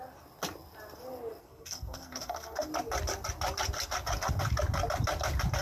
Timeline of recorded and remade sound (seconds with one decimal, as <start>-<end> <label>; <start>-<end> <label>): 0.0-1.4 recorded; 1.4-2.7 remade; 2.7-5.6 recorded